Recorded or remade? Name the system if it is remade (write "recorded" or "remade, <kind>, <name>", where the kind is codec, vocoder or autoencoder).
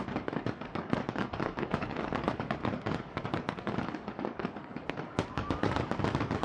remade, codec, DAC